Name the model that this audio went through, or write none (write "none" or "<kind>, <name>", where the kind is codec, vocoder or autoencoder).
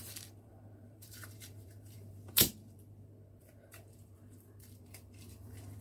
vocoder, BigVGAN v2